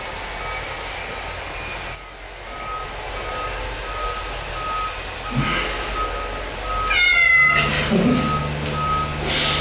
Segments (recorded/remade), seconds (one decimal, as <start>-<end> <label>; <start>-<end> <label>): 0.0-9.6 recorded